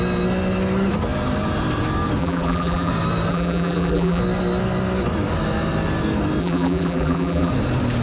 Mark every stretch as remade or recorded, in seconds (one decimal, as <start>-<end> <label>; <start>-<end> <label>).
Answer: 0.0-2.2 recorded; 2.2-2.9 remade; 2.9-3.3 recorded; 3.3-4.2 remade; 4.2-6.4 recorded; 6.4-7.5 remade; 7.5-8.0 recorded